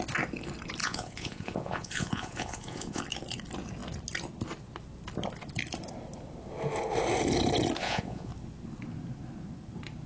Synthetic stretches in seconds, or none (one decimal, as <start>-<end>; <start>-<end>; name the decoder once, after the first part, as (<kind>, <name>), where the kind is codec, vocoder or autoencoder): 0.8-3.0 (vocoder, Vocos); 7.8-8.3